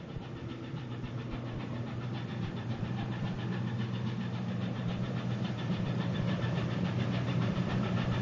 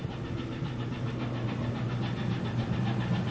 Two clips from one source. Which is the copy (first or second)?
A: first